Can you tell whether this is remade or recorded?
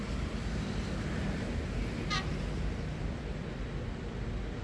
recorded